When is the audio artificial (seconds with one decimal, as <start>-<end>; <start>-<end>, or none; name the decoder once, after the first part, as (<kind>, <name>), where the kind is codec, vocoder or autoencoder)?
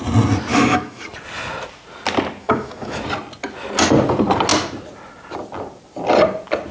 0.5-1.0 (autoencoder, DAC-VAE); 2.4-3.0